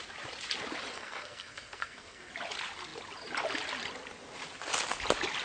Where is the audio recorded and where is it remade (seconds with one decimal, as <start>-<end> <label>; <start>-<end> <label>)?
0.0-0.9 recorded; 0.9-2.3 remade; 2.3-5.4 recorded